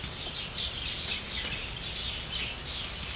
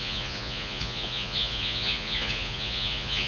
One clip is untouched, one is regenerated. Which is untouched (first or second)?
first